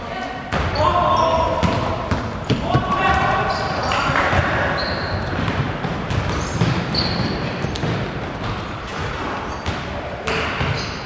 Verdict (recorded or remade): recorded